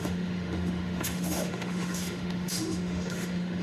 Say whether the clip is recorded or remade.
remade